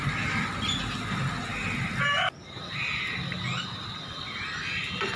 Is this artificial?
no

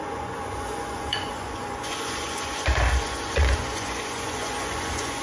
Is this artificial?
yes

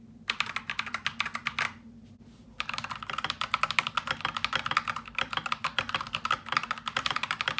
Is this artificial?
no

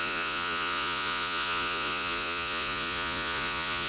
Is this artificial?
yes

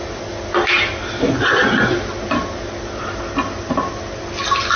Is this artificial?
no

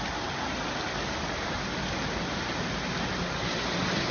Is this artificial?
no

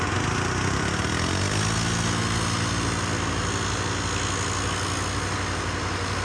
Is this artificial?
no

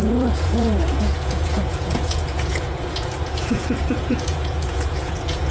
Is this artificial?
yes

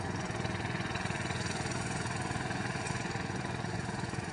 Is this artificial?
yes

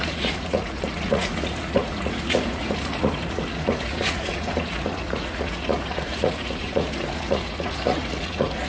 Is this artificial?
yes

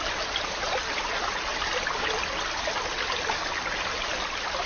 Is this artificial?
no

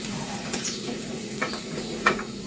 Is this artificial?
yes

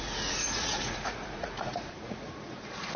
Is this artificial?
yes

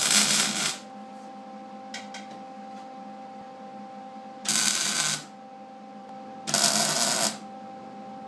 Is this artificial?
no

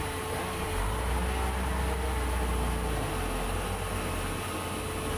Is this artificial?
no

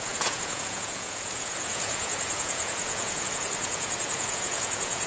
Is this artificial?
yes